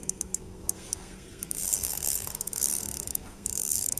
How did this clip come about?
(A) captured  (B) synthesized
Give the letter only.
B